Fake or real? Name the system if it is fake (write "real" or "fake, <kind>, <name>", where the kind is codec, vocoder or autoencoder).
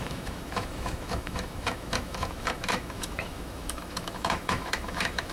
fake, autoencoder, DAC-VAE